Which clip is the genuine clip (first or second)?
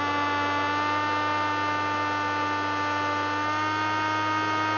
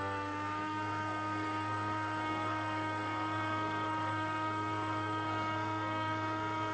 first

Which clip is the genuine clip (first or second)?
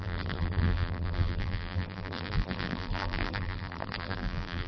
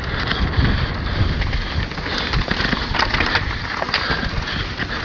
second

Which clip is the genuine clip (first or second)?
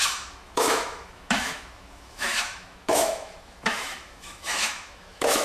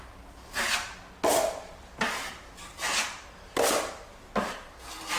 second